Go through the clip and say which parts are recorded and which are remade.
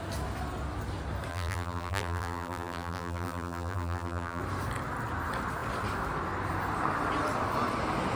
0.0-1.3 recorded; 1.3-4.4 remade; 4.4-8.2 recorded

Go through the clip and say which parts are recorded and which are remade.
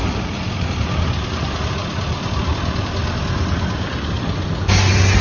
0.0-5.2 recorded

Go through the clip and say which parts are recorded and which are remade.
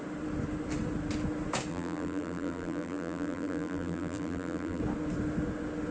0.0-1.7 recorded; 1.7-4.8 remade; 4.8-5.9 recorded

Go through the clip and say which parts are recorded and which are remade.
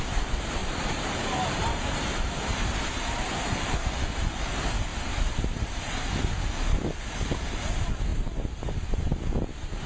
0.0-0.6 recorded; 0.6-3.3 remade; 3.3-4.9 recorded; 4.9-6.2 remade; 6.2-9.9 recorded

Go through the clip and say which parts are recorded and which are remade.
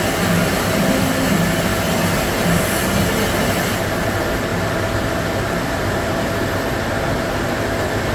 0.0-8.1 recorded